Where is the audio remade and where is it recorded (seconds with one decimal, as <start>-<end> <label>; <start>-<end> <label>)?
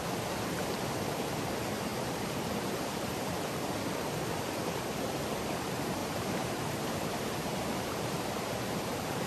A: 0.0-1.9 recorded; 1.9-3.2 remade; 3.2-6.0 recorded; 6.0-9.3 remade